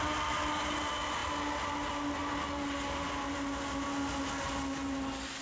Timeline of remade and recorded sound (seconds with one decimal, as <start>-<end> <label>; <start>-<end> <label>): 0.0-5.4 recorded